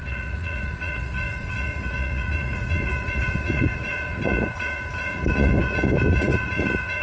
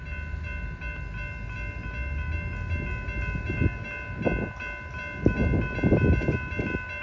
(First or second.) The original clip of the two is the second